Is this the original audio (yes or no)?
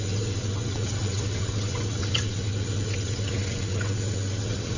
no